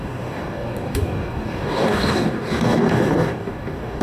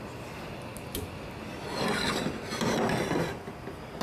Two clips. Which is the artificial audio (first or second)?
first